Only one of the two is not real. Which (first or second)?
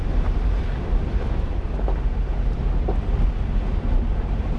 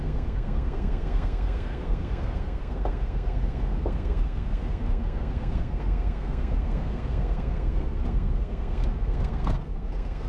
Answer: second